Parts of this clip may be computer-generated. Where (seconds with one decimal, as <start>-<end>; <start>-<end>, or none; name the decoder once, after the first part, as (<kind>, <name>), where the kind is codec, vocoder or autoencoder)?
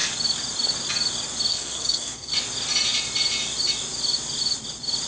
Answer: 1.5-2.3 (codec, SNAC)